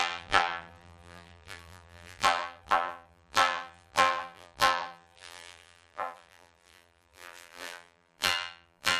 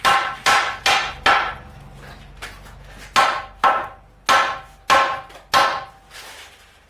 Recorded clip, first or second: second